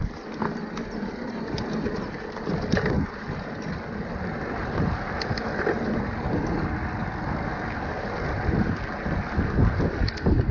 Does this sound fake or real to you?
real